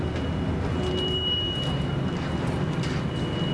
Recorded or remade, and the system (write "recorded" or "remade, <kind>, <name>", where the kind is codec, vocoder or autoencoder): recorded